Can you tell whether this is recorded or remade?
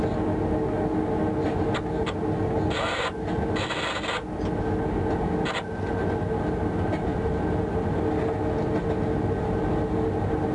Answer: recorded